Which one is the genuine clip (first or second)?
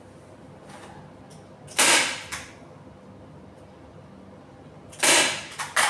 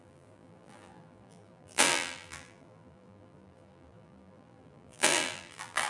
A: first